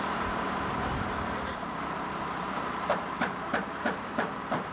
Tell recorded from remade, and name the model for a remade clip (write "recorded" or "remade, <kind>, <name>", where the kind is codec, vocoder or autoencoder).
remade, vocoder, BigVGAN v2